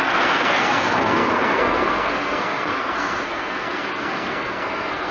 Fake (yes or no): yes